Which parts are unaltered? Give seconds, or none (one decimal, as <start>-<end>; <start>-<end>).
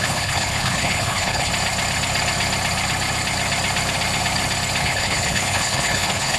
1.5-4.8